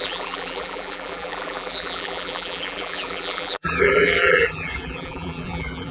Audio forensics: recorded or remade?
remade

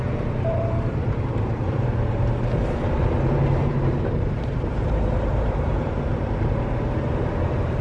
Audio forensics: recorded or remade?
remade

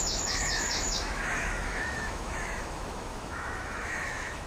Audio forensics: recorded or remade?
remade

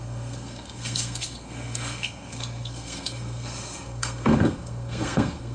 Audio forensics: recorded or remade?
remade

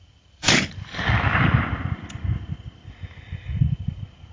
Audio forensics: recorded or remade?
remade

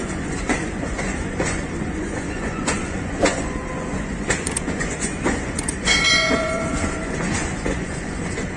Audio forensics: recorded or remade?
remade